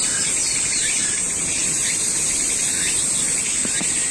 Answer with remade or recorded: remade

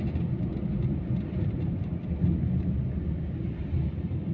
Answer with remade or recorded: recorded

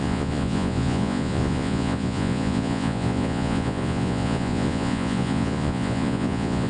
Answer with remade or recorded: remade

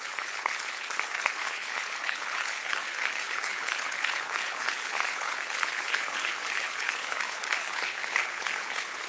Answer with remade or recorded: remade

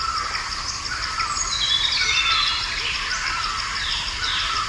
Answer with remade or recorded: recorded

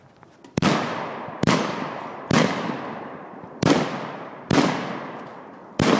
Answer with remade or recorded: remade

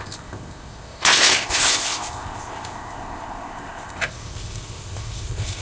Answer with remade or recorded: remade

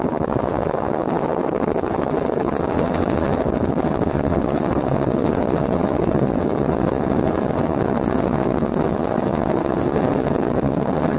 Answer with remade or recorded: remade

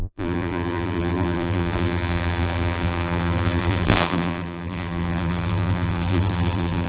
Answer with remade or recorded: remade